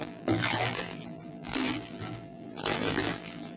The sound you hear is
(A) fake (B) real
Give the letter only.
A